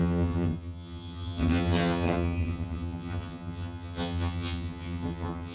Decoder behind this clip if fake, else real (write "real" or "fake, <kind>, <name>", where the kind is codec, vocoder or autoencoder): fake, vocoder, HiFi-GAN